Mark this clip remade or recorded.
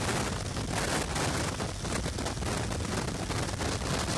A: recorded